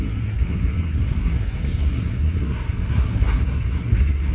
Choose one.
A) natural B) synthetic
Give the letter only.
B